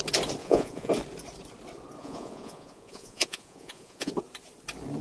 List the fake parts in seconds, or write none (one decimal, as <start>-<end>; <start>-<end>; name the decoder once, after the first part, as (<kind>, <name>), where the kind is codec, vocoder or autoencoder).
0.4-0.9 (vocoder, Vocos); 2.0-4.1